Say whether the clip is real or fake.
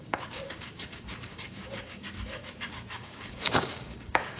fake